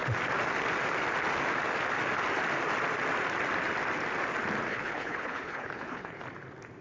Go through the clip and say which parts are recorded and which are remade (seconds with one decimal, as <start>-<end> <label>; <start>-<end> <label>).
0.0-4.7 recorded; 4.7-6.2 remade; 6.2-6.8 recorded